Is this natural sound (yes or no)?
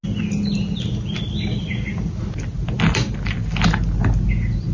yes